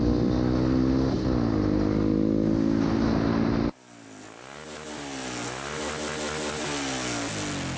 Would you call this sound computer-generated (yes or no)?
no